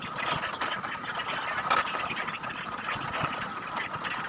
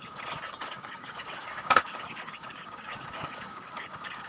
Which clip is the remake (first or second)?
second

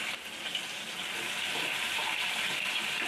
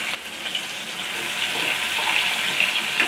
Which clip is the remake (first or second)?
first